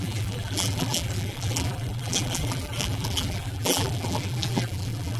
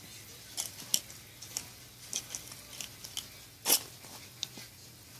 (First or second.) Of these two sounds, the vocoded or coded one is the first